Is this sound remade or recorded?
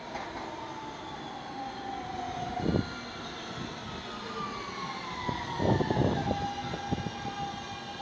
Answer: recorded